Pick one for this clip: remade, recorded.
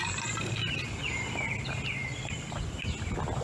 recorded